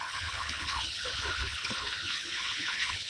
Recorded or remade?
remade